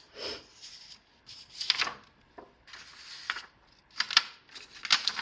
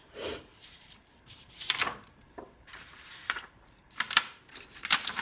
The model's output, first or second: second